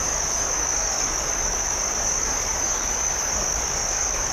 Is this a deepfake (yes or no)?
yes